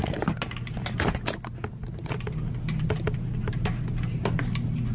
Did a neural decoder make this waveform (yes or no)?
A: no